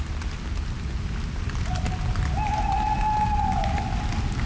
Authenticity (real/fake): real